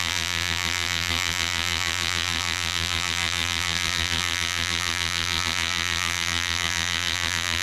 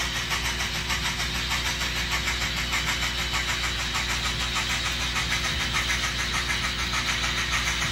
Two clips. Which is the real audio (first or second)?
second